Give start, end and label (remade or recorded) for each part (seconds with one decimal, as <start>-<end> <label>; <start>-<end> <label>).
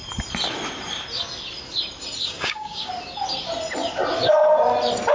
0.0-2.2 recorded; 2.2-2.9 remade; 2.9-5.1 recorded